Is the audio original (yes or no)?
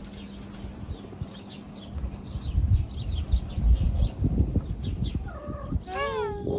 yes